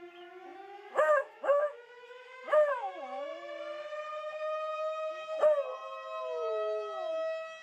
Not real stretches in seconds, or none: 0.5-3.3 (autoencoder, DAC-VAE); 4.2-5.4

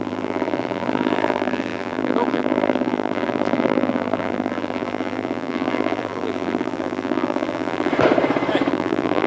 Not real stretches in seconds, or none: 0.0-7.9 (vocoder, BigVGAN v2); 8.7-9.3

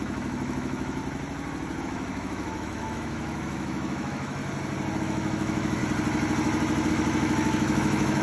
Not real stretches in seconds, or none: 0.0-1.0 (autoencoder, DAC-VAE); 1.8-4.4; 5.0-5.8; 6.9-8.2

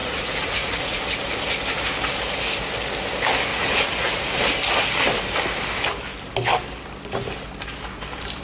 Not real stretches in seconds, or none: 0.0-1.0 (vocoder, Vocos); 3.5-4.4